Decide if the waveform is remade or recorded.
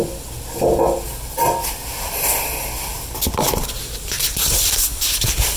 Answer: recorded